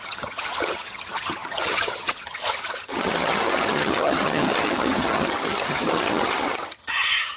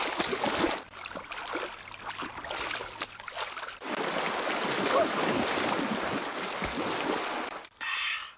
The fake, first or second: first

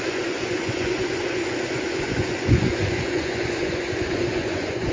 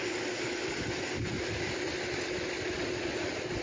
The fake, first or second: first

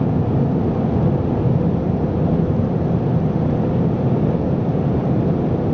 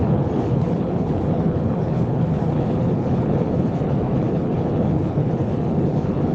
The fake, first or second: second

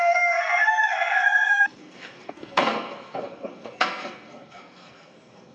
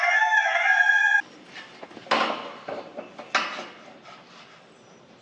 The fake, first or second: first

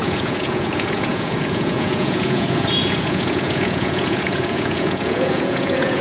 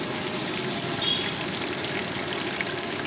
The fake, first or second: first